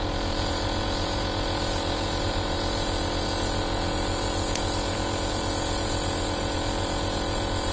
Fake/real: fake